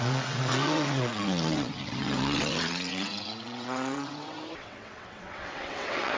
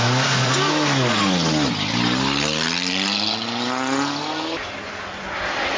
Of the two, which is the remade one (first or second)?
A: first